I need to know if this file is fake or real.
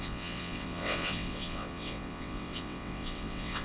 fake